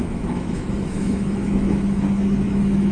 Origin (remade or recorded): remade